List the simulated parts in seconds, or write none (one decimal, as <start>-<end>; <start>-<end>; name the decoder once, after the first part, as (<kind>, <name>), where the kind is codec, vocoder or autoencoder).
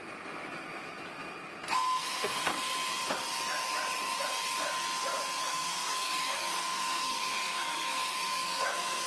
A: 1.7-2.5 (codec, SNAC); 5.4-9.1